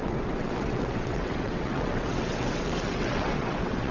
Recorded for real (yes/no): no